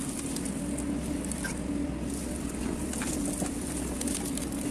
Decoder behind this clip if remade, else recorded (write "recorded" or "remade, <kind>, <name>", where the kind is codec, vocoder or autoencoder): recorded